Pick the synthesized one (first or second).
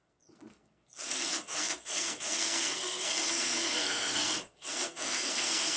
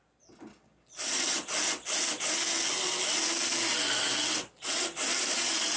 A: first